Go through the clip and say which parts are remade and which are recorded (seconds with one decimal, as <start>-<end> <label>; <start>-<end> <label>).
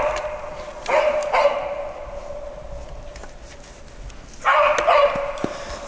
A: 0.0-5.9 recorded